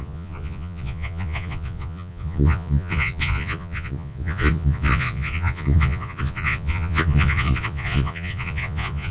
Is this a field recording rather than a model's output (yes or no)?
no